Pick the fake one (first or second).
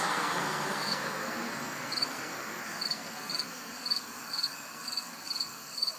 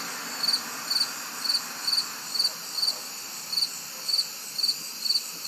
first